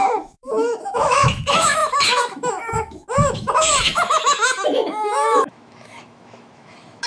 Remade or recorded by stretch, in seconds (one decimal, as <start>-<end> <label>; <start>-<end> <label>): 0.0-7.1 remade